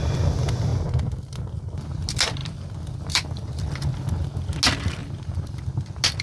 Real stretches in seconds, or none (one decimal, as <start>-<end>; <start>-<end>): 0.0-2.4; 3.8-5.0; 5.6-6.2